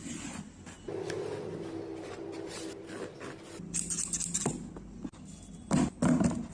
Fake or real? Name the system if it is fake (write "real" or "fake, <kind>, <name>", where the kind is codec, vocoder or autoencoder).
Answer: real